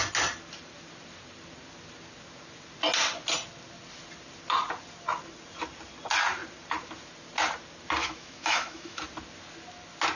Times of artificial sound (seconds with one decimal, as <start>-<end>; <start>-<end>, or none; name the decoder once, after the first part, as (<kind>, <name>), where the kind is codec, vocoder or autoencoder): 8.0-9.0 (autoencoder, DAC-VAE)